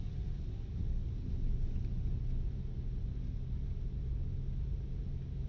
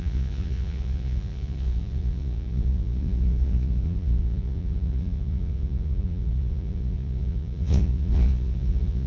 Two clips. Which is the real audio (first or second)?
first